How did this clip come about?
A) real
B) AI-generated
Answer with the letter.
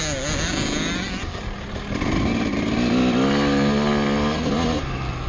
A